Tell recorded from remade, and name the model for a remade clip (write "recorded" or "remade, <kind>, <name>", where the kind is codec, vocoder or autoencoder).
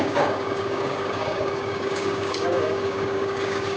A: remade, codec, DAC